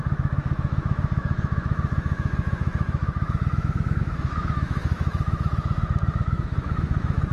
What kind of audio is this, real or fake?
fake